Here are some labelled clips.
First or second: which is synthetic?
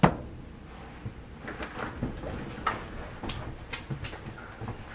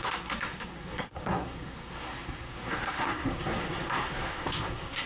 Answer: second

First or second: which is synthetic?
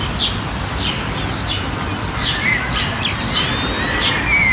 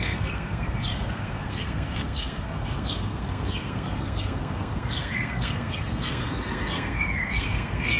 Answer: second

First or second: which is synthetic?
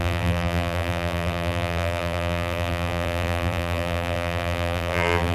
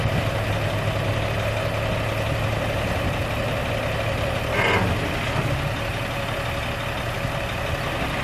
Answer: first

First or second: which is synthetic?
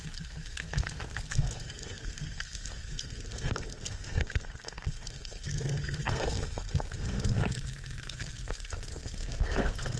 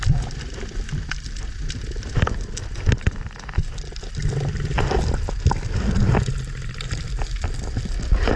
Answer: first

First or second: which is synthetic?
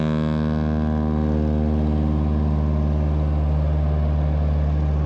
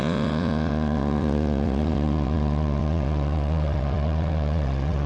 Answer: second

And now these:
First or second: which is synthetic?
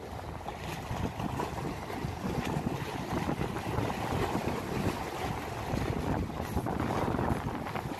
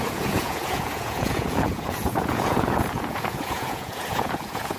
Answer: second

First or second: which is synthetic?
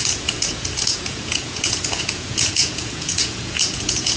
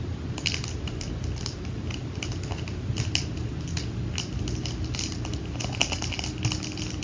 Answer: first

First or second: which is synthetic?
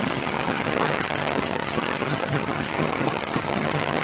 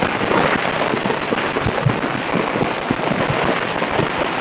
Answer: first